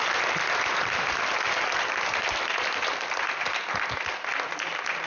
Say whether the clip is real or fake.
real